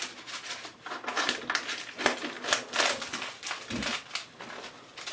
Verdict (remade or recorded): recorded